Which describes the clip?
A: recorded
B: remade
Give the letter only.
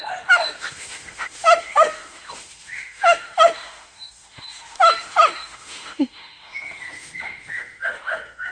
B